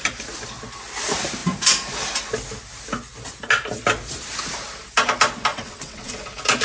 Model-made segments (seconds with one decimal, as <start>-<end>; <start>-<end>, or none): 5.5-6.1